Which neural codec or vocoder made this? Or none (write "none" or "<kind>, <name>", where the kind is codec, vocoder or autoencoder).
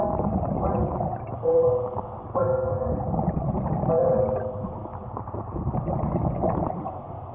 none